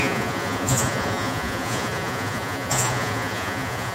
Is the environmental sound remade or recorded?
remade